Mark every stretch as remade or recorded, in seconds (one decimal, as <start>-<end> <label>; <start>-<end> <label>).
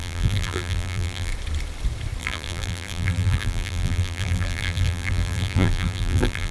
0.0-1.3 remade; 1.3-2.2 recorded; 2.2-6.5 remade